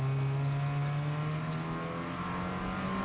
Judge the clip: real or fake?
real